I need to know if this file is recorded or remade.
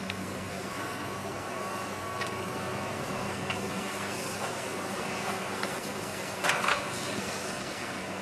remade